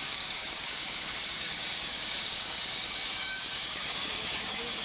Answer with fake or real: fake